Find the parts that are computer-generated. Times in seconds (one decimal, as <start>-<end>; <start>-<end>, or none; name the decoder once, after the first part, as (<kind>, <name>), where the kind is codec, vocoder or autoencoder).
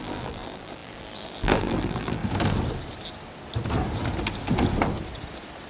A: 0.0-2.2 (vocoder, BigVGAN v2)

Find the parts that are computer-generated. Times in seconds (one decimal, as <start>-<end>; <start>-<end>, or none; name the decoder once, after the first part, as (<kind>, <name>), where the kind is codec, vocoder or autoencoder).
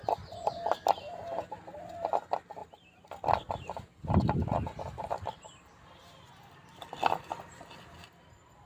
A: 2.6-3.5 (vocoder, BigVGAN v2)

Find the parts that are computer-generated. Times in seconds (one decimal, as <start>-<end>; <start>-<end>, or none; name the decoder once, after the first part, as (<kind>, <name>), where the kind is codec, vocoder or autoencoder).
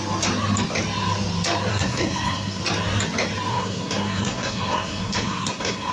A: 1.7-2.6 (codec, SNAC); 3.5-5.9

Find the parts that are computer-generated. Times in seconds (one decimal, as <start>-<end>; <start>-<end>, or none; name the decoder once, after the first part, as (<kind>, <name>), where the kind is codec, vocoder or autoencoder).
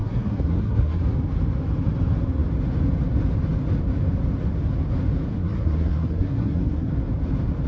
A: 0.0-1.0 (codec, SNAC); 5.3-6.9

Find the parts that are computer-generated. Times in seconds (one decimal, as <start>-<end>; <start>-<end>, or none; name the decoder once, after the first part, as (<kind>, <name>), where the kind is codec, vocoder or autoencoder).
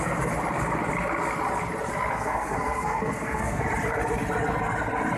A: 2.1-3.6 (codec, SNAC)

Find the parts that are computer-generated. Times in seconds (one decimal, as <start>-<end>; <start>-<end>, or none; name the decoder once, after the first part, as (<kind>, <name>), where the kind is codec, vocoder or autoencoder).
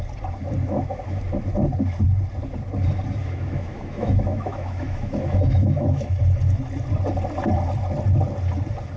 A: 0.6-1.2 (autoencoder, DAC-VAE); 3.2-6.2